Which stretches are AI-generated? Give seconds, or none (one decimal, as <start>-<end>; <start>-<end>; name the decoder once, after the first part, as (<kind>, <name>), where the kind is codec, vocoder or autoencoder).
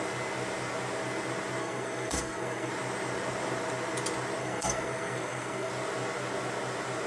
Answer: 1.6-2.7 (codec, SNAC); 4.4-5.7